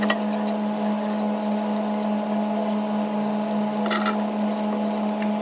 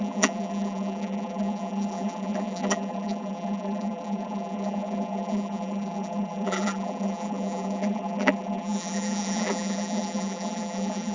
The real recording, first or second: first